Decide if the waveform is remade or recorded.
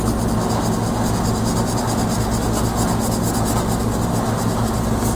recorded